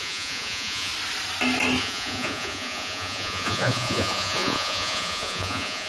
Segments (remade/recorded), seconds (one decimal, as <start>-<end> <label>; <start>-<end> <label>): 0.0-0.9 remade; 0.9-1.8 recorded; 1.8-5.9 remade